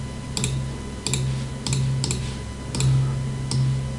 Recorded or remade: recorded